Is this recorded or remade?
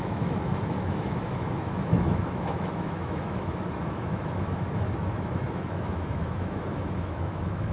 remade